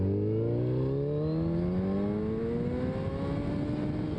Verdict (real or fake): real